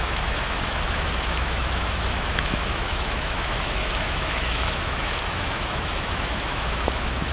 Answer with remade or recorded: remade